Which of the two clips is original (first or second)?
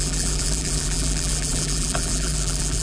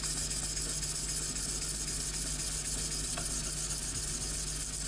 second